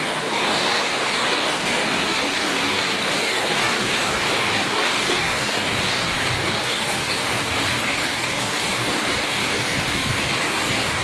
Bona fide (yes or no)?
no